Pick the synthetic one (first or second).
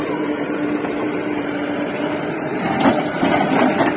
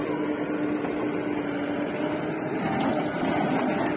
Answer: first